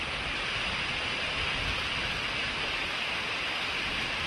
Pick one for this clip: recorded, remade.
recorded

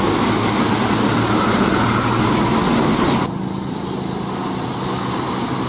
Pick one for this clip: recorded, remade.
recorded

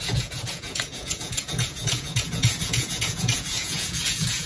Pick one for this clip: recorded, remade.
remade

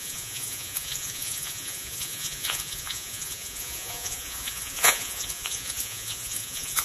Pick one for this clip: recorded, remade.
remade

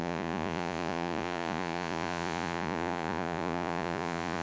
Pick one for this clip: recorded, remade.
remade